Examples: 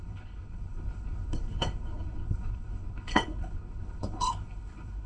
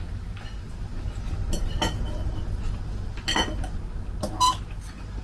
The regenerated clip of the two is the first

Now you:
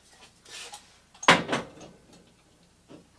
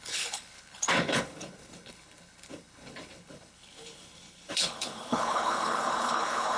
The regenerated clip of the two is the second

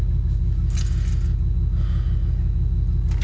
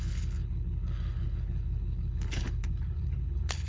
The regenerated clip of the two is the second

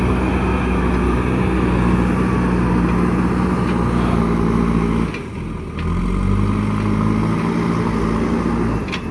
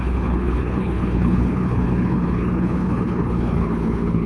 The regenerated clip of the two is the second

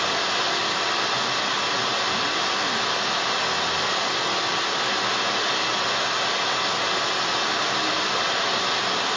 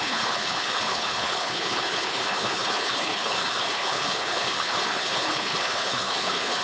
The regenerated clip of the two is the second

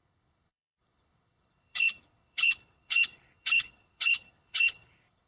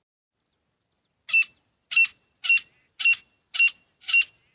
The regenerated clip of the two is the first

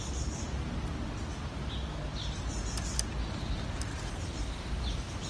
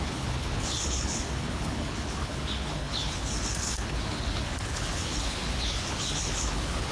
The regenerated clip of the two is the second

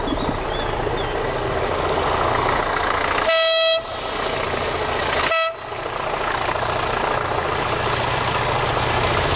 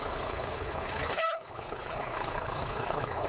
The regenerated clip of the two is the second